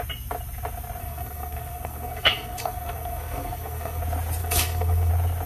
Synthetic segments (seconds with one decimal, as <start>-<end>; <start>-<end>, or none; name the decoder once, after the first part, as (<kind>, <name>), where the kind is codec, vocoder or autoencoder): 1.0-4.0 (codec, SNAC); 4.4-5.1